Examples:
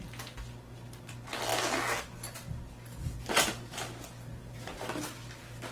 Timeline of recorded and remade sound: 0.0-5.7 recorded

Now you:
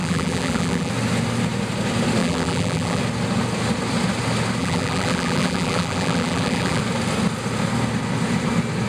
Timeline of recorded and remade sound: 0.0-0.9 remade; 0.9-2.2 recorded; 2.2-3.0 remade; 3.0-4.6 recorded; 4.6-6.8 remade; 6.8-8.9 recorded

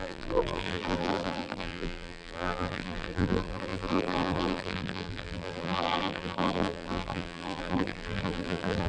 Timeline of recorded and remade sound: 0.0-8.9 remade

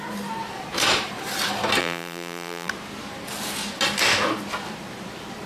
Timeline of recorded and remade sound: 0.0-1.8 recorded; 1.8-2.7 remade; 2.7-5.5 recorded